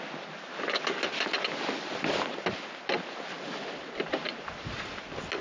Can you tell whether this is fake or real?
real